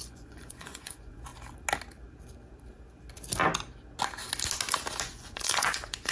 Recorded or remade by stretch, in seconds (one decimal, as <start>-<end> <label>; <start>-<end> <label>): 0.0-1.3 remade; 1.3-5.0 recorded; 5.0-6.1 remade

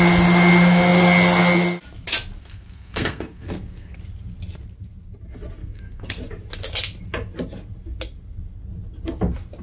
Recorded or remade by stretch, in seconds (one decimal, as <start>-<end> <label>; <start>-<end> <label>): 0.0-2.4 recorded; 2.4-4.0 remade; 4.0-5.6 recorded; 5.6-6.2 remade; 6.2-9.6 recorded

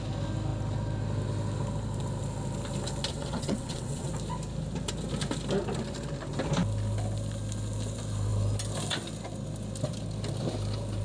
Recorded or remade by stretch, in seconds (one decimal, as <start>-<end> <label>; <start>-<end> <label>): 0.0-3.1 recorded; 3.1-4.1 remade; 4.1-11.0 recorded

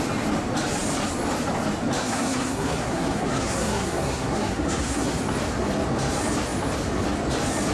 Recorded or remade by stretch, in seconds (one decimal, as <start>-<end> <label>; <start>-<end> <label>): 0.0-2.0 recorded; 2.0-5.2 remade; 5.2-7.7 recorded

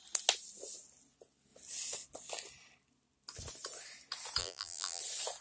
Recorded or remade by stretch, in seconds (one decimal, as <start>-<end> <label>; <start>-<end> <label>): 0.0-4.4 recorded; 4.4-5.0 remade; 5.0-5.4 recorded